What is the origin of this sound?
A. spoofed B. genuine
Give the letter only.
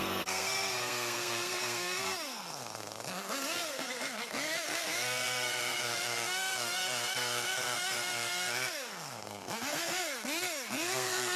A